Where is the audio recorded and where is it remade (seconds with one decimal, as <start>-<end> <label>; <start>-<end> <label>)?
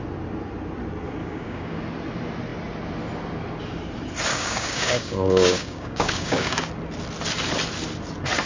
0.0-1.2 recorded; 1.2-1.8 remade; 1.8-4.3 recorded; 4.3-6.7 remade; 6.7-8.5 recorded